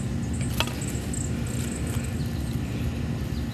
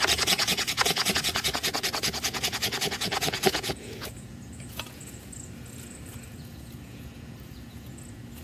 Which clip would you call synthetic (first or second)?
second